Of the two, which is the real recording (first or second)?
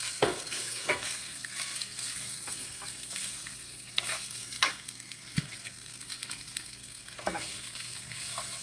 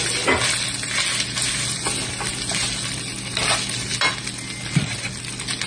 second